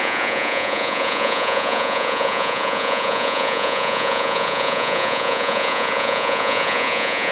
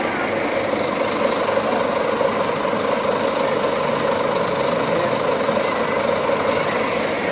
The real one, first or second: second